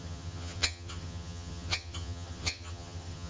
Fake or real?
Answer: fake